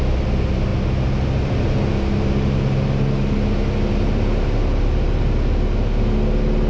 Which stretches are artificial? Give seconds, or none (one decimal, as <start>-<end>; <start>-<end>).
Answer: none